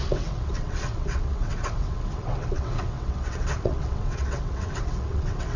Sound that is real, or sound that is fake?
fake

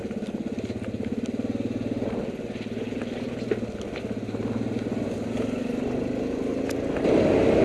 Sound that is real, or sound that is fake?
real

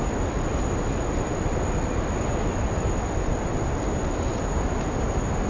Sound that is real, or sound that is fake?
real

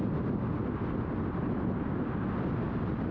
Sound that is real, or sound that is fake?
real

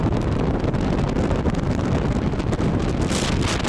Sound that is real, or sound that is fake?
real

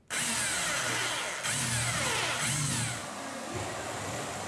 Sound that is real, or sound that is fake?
real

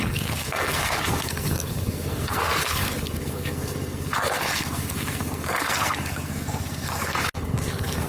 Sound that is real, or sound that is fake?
fake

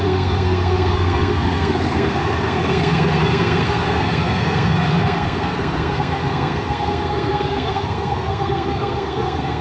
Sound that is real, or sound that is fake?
fake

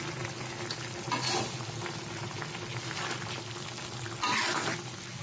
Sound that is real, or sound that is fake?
real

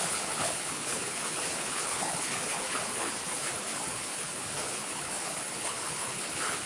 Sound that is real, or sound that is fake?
fake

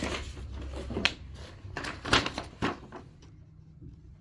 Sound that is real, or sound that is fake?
real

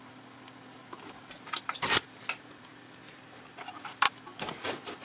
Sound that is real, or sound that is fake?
fake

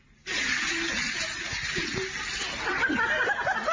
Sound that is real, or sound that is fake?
real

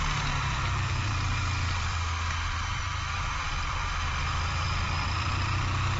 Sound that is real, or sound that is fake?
fake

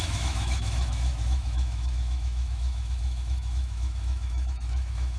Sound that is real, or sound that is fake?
fake